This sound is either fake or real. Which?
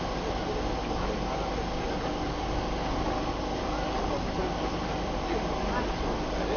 real